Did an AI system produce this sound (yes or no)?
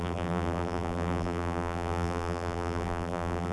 yes